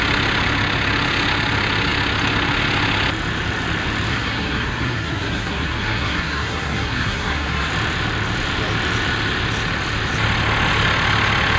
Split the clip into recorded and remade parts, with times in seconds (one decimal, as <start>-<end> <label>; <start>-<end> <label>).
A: 0.0-4.1 recorded; 4.1-7.7 remade; 7.7-11.6 recorded